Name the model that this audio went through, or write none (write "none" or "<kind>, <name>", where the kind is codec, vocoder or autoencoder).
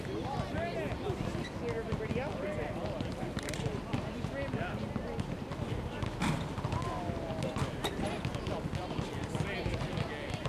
none